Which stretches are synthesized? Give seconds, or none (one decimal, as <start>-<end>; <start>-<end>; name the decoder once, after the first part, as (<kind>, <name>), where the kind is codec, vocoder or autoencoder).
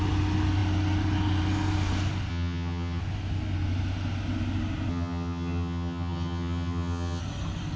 2.3-3.0 (vocoder, HiFi-GAN); 4.9-7.2